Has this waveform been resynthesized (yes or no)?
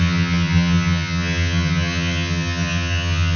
yes